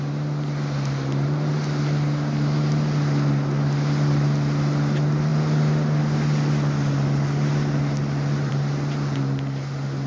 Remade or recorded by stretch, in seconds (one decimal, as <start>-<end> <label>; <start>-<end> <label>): 0.0-10.1 recorded